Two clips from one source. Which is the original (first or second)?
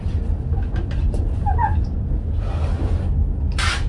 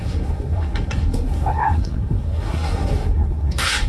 first